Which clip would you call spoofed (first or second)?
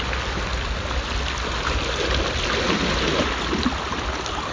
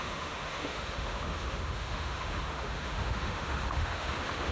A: second